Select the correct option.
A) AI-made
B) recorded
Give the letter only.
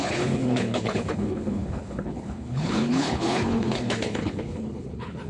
A